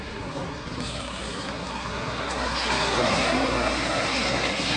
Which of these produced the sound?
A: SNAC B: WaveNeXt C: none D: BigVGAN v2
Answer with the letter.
A